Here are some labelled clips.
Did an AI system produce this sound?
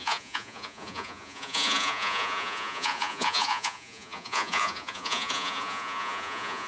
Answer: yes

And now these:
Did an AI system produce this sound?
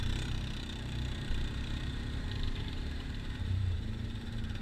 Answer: yes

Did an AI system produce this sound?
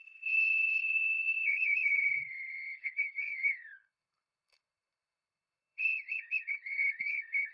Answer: yes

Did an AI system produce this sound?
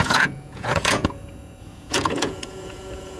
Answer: yes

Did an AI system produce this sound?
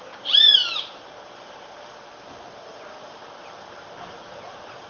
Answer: yes